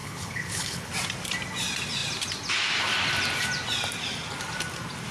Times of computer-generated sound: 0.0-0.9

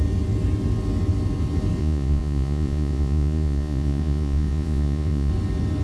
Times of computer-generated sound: 1.8-5.3

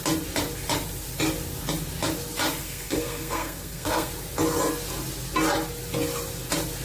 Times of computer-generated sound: 2.6-4.1

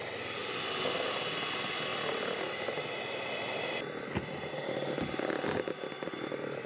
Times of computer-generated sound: 0.0-0.4; 0.9-1.9; 5.9-6.7

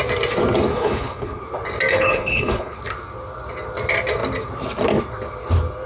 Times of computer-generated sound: 0.7-1.4; 1.9-2.8

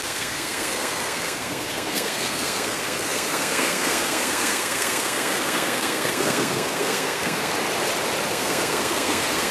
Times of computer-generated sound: 0.0-7.5; 8.3-9.5

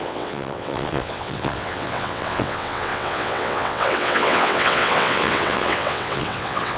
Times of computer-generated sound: 0.0-6.8

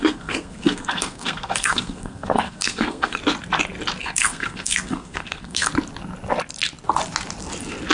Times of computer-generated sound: 0.0-3.2; 4.0-5.7